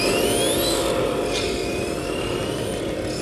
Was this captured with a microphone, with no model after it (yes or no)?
yes